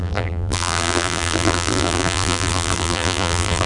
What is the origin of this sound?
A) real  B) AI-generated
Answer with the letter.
B